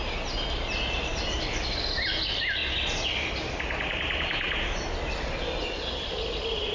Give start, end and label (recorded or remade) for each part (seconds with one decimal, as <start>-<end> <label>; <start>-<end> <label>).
0.0-6.7 recorded